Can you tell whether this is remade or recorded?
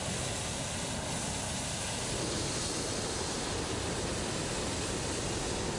recorded